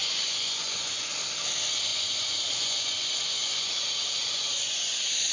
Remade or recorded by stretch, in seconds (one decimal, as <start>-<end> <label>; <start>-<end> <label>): 0.0-1.1 remade; 1.1-1.9 recorded; 1.9-3.7 remade; 3.7-4.2 recorded; 4.2-5.3 remade